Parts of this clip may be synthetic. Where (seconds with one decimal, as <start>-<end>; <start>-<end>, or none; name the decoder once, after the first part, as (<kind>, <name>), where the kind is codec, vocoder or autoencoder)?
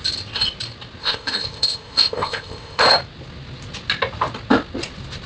1.0-2.8 (codec, ZipCodec)